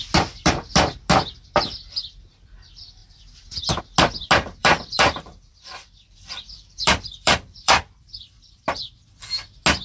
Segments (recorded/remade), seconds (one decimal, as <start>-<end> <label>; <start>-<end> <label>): 0.0-4.6 recorded; 4.6-9.3 remade; 9.3-9.8 recorded